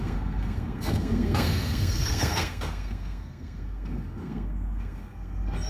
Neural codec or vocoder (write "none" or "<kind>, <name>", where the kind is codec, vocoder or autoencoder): codec, SNAC